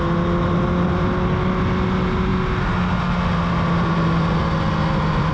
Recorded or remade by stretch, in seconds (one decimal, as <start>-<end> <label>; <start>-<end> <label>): 0.0-5.3 recorded